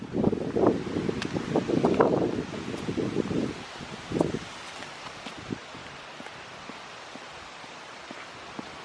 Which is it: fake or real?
real